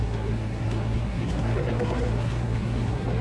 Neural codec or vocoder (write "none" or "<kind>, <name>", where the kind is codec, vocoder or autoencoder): codec, SNAC